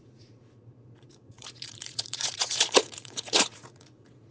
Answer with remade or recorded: remade